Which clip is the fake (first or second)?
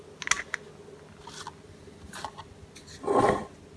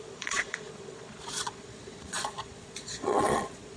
second